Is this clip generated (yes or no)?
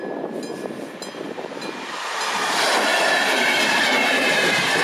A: no